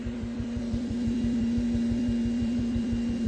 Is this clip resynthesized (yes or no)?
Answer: yes